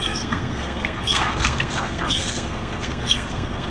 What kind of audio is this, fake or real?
fake